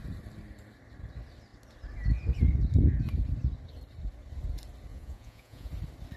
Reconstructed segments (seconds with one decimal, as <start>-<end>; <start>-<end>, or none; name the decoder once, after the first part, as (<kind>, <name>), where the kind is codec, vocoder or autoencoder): 4.9-5.7 (vocoder, Vocos)